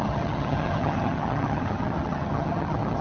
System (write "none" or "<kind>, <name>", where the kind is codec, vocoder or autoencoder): vocoder, HiFi-GAN